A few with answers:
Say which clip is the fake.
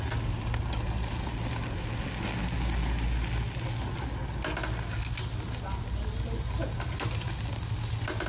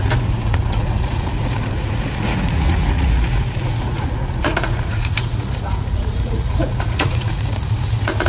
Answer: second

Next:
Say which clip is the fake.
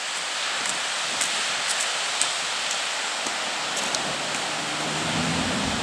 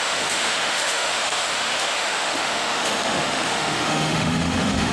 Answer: second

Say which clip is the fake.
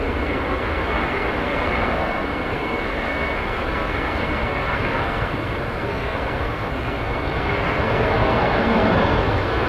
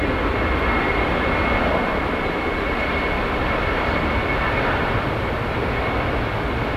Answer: first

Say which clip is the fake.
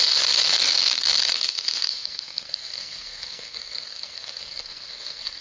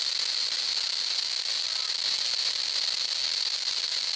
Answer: first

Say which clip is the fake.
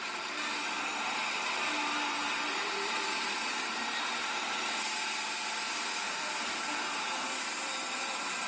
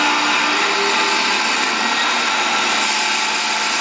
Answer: first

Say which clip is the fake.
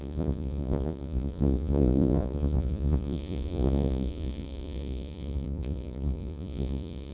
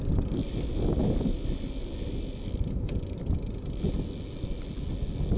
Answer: first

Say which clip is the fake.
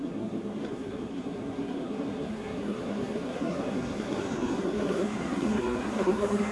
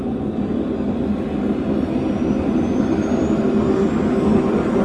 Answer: first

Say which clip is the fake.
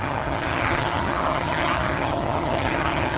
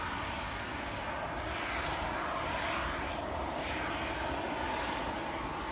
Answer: first